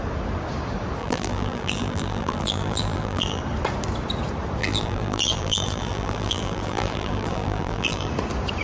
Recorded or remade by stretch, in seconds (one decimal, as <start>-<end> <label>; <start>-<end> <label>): 0.0-1.0 recorded; 1.0-3.4 remade; 3.4-4.6 recorded; 4.6-8.1 remade; 8.1-8.6 recorded